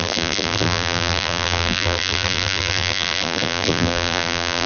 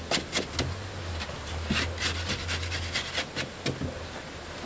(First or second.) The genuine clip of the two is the second